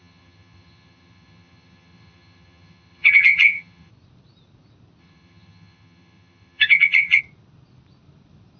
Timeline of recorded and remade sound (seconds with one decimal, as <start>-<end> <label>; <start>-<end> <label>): 0.0-3.9 remade; 3.9-5.0 recorded; 5.0-7.2 remade; 7.2-8.6 recorded

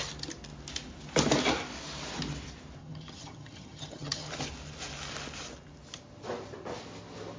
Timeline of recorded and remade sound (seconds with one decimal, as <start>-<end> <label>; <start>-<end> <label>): 0.0-2.8 recorded; 2.8-4.3 remade; 4.3-7.4 recorded

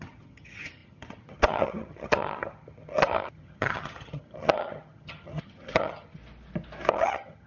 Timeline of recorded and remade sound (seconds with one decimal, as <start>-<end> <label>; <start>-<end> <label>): 0.0-6.2 remade; 6.2-6.9 recorded; 6.9-7.5 remade

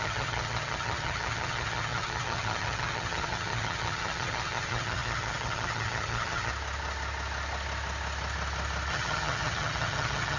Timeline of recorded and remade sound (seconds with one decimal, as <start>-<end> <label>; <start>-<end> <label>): 0.0-6.5 remade; 6.5-8.9 recorded; 8.9-10.4 remade

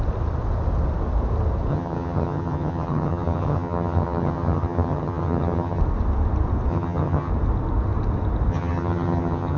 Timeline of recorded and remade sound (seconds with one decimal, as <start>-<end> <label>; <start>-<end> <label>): 0.0-1.7 recorded; 1.7-5.8 remade; 5.8-6.7 recorded; 6.7-7.3 remade; 7.3-8.5 recorded; 8.5-9.6 remade

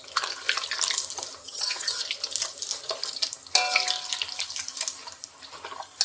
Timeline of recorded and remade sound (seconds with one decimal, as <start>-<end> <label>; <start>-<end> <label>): 0.0-1.4 recorded; 1.4-2.0 remade; 2.0-6.0 recorded

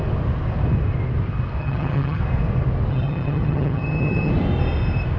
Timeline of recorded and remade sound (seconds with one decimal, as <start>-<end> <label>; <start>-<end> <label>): 0.0-1.6 recorded; 1.6-2.2 remade; 2.2-2.9 recorded; 2.9-4.3 remade; 4.3-5.2 recorded

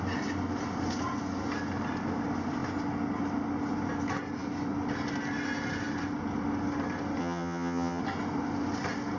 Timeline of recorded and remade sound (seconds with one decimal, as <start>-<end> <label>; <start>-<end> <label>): 0.0-7.2 recorded; 7.2-8.0 remade; 8.0-9.2 recorded